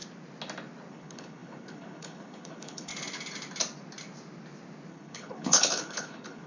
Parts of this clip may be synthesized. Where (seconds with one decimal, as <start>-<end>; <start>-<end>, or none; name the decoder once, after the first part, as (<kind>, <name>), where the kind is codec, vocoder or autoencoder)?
0.9-2.9 (codec, HILCodec); 4.9-6.5